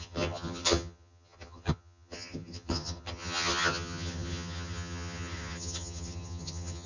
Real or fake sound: fake